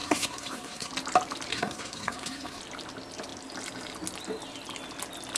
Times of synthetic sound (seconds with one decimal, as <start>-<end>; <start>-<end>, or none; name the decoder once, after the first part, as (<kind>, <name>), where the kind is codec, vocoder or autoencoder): 0.0-0.9 (codec, SNAC); 1.5-2.6